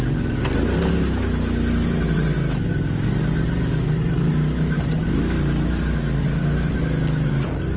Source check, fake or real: real